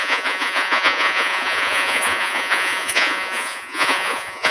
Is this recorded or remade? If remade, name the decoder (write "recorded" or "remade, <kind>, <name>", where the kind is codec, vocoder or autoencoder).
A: remade, vocoder, Vocos